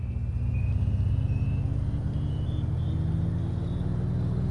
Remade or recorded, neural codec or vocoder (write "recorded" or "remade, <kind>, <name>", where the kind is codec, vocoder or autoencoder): recorded